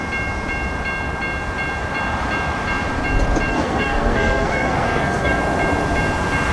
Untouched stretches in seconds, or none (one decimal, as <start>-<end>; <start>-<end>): 0.0-3.5; 5.4-6.5